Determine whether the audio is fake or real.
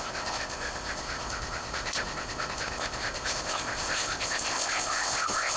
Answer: fake